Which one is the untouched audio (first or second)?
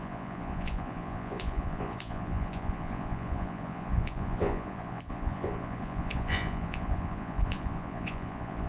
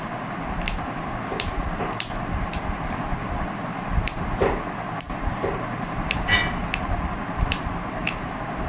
second